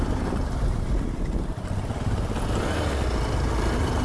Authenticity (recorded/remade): recorded